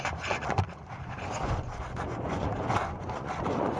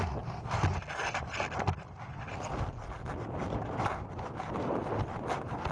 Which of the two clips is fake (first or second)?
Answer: first